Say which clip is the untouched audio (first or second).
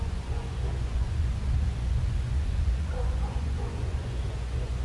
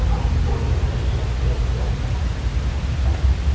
second